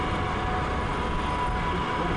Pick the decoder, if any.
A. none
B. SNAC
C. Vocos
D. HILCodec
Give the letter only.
A